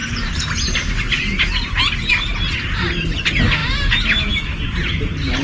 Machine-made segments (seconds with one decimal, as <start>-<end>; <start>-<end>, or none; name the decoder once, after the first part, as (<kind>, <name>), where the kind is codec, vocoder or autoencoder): none